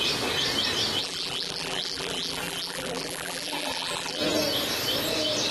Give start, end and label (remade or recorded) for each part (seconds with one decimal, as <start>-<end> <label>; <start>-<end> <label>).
0.0-1.0 recorded; 1.0-4.2 remade; 4.2-5.5 recorded